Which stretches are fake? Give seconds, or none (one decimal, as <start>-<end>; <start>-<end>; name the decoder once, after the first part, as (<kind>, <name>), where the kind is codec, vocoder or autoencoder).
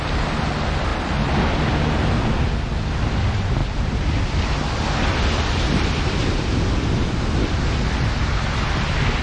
3.6-6.3 (vocoder, BigVGAN v2)